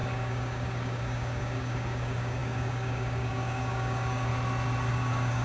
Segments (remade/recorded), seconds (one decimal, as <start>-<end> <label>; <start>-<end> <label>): 0.0-4.3 remade; 4.3-4.9 recorded; 4.9-5.4 remade